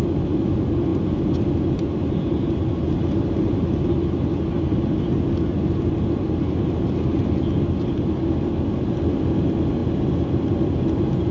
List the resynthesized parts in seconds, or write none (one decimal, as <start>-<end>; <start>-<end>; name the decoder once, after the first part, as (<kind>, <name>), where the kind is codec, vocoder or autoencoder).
none